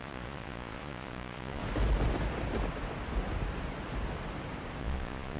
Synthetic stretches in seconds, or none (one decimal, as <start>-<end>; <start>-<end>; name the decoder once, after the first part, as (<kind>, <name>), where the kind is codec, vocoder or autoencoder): 0.0-1.6 (vocoder, Vocos); 4.8-5.4

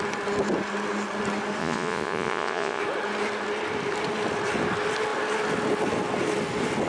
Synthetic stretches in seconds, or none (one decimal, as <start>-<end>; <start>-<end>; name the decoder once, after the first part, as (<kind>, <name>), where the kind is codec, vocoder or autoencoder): 1.6-2.8 (vocoder, Vocos)